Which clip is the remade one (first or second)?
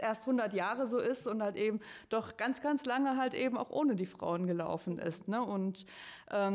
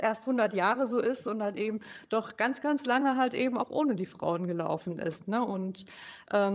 second